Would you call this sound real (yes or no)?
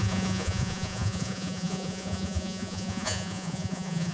no